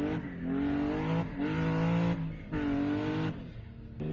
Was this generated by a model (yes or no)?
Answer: no